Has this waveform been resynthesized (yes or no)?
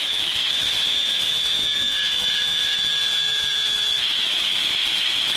yes